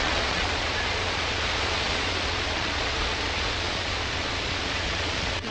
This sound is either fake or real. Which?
fake